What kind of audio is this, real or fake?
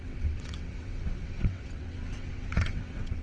fake